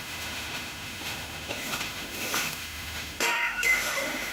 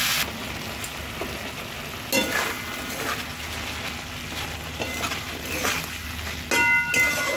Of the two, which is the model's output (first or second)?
first